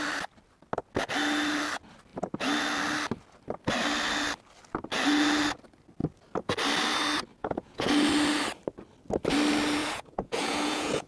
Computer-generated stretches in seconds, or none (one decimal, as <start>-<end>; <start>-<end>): 7.3-7.9; 9.8-11.1